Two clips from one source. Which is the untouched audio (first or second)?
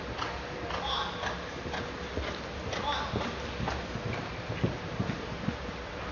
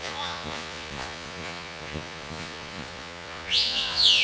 first